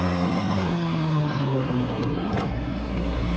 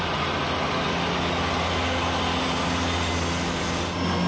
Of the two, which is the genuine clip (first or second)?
second